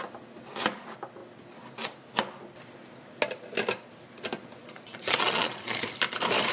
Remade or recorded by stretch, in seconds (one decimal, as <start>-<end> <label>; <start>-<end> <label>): 0.0-4.6 recorded; 4.6-5.9 remade; 5.9-6.5 recorded